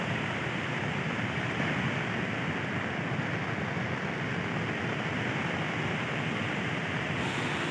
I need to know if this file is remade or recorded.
recorded